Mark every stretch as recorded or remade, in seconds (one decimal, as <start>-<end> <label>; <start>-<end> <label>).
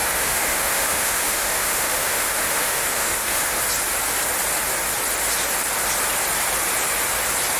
0.0-3.6 remade; 3.6-7.6 recorded